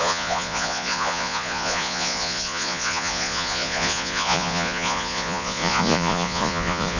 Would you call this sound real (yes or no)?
no